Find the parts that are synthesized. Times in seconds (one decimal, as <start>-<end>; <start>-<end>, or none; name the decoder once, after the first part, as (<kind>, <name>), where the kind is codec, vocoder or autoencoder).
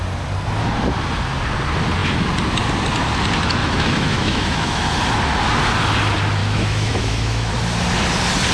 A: 3.6-5.0 (autoencoder, DAC-VAE); 6.4-7.5